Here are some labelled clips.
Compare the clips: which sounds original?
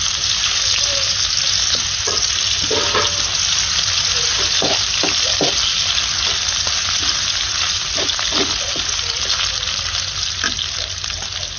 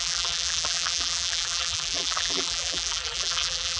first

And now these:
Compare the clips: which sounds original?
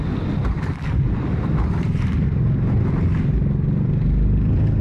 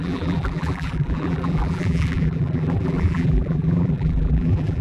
first